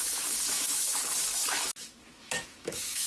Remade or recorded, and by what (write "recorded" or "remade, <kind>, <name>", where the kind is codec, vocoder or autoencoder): remade, autoencoder, DAC-VAE